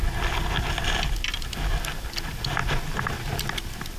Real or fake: real